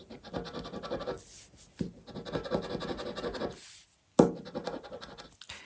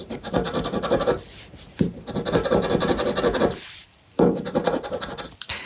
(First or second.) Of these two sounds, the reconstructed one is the second